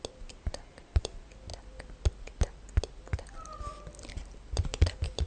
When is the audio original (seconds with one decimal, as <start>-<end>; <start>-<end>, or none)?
0.0-5.3